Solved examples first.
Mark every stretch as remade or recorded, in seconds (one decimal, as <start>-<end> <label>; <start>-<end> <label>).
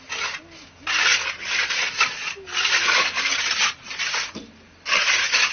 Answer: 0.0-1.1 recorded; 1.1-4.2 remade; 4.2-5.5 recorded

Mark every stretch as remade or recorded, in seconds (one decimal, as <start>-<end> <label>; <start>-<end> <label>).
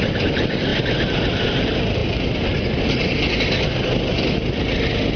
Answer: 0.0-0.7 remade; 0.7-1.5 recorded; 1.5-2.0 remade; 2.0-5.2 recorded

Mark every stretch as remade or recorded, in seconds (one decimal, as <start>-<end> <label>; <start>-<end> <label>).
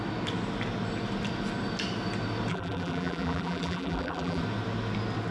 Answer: 0.0-2.5 recorded; 2.5-4.4 remade; 4.4-5.3 recorded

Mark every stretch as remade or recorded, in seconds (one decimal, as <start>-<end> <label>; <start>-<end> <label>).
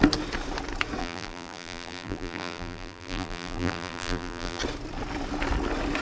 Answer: 0.0-1.0 recorded; 1.0-4.6 remade; 4.6-6.0 recorded